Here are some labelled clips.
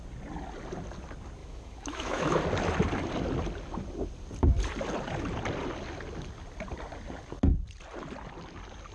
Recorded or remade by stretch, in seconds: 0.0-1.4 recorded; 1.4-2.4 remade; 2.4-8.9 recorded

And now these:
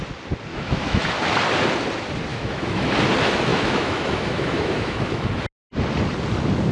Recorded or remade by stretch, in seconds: 0.0-0.5 recorded; 0.5-1.2 remade; 1.2-2.3 recorded; 2.3-2.9 remade; 2.9-3.5 recorded; 3.5-5.3 remade; 5.3-6.7 recorded

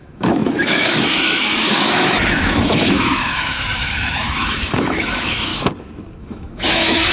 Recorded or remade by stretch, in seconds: 0.0-5.5 remade; 5.5-6.2 recorded; 6.2-7.1 remade

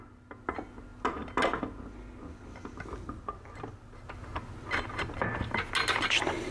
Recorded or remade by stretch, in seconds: 0.0-6.5 recorded

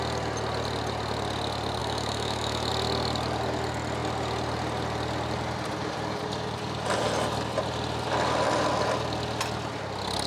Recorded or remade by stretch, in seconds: 0.0-1.8 recorded; 1.8-2.7 remade; 2.7-10.3 recorded